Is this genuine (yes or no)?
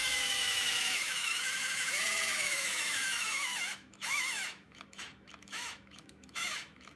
no